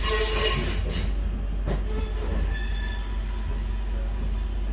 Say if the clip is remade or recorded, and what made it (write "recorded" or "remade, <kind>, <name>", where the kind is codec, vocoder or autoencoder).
recorded